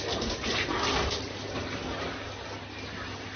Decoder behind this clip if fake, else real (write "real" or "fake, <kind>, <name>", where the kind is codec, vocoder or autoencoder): real